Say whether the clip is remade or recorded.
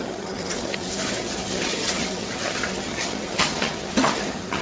remade